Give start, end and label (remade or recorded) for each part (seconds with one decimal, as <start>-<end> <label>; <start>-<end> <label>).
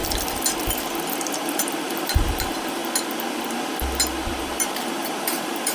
0.0-1.4 recorded; 1.4-2.8 remade; 2.8-4.3 recorded; 4.3-5.7 remade